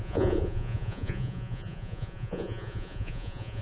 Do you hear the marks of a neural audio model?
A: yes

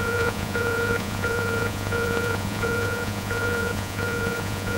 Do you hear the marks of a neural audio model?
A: yes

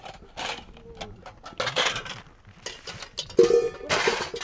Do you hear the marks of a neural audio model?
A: no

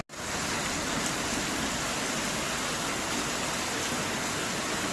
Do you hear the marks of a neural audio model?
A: no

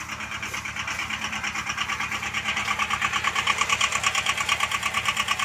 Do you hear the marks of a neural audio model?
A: no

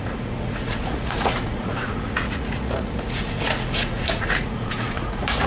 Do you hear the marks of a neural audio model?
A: yes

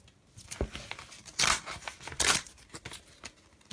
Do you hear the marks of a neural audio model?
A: no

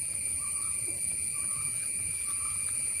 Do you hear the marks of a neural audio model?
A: yes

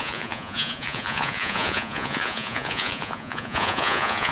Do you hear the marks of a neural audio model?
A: yes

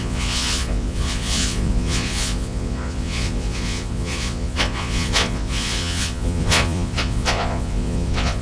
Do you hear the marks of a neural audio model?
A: yes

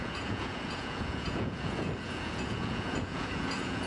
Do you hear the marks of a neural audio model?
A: yes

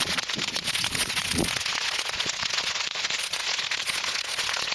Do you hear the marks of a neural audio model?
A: yes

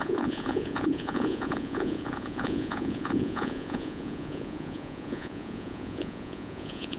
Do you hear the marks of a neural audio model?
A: yes